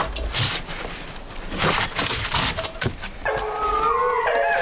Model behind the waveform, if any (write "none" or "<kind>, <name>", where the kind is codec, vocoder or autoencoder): none